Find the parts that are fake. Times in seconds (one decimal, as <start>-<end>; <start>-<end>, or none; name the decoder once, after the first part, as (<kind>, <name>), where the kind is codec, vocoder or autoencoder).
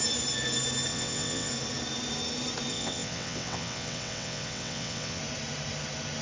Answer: 0.9-1.5 (vocoder, WaveNeXt); 2.7-5.2